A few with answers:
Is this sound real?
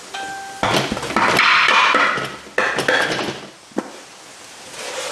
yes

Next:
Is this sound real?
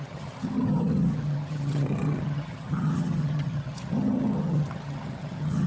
no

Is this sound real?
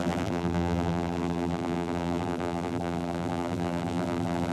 no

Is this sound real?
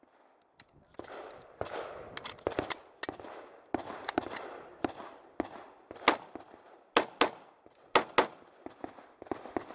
yes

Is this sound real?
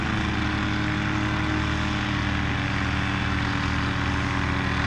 yes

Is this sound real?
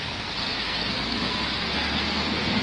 no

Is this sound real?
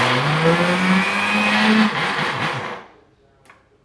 yes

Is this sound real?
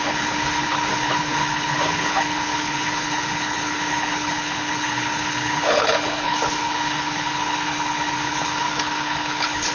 no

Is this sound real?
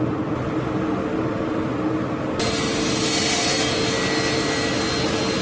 yes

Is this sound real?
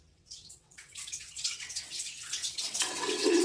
no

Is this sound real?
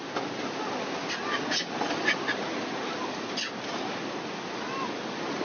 yes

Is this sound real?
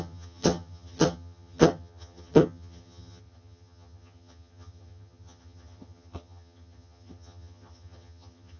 no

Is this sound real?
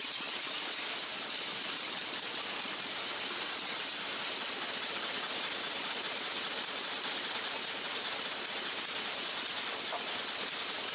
yes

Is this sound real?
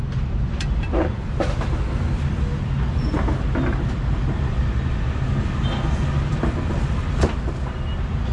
yes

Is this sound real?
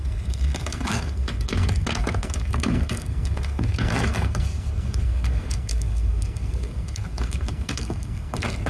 no